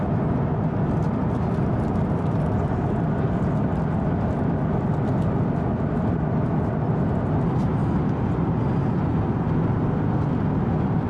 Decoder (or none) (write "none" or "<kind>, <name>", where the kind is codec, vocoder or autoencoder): none